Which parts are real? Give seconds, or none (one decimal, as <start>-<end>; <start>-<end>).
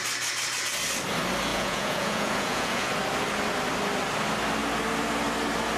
0.0-1.5; 2.9-5.8